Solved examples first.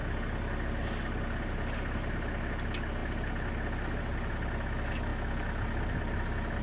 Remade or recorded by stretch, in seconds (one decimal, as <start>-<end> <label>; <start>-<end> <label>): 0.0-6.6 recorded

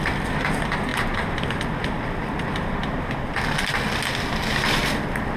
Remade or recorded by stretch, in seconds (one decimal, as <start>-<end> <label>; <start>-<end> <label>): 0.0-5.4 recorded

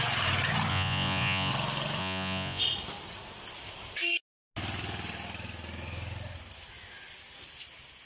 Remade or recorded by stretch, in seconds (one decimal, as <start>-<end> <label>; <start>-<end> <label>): 0.0-0.7 recorded; 0.7-1.5 remade; 1.5-2.0 recorded; 2.0-2.6 remade; 2.6-8.1 recorded

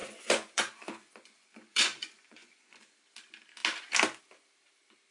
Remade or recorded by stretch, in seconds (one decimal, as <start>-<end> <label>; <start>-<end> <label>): 0.0-2.8 remade; 2.8-5.1 recorded

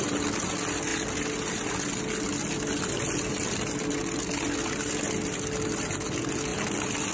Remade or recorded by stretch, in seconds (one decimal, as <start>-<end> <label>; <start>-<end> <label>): 0.0-7.1 recorded

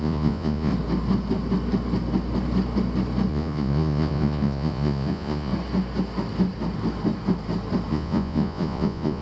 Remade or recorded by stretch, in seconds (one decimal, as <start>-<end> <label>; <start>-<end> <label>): 0.0-0.7 remade; 0.7-3.3 recorded; 3.3-5.5 remade; 5.5-7.9 recorded; 7.9-9.2 remade

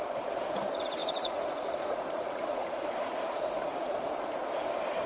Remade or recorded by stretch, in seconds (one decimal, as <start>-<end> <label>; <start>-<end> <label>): 0.0-1.0 recorded; 1.0-4.1 remade; 4.1-5.1 recorded